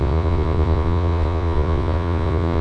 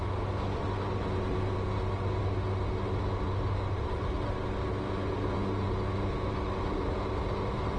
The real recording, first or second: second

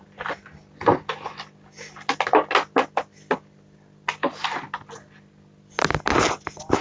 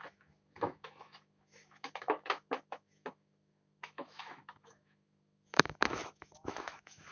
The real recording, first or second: first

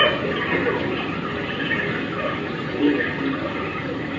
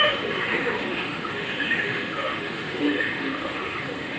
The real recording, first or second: first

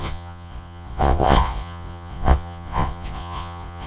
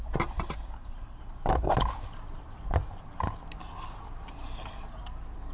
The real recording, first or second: second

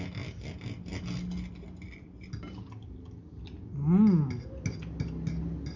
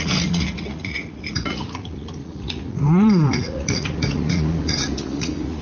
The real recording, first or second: first